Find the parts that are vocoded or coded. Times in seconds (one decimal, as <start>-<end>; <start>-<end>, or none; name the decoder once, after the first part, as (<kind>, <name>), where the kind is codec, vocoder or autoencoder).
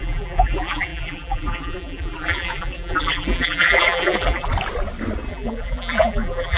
0.0-4.5 (vocoder, BigVGAN v2); 5.3-6.6